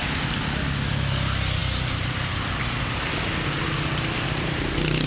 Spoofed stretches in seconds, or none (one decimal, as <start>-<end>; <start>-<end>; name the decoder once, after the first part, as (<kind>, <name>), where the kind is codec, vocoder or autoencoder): none